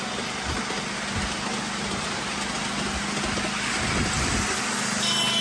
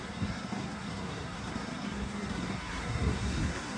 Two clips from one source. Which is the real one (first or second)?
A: first